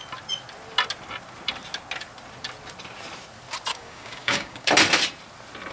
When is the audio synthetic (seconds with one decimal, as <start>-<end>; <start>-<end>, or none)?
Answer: 3.7-4.7